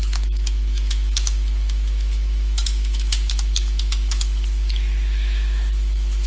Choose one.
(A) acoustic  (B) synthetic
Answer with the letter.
B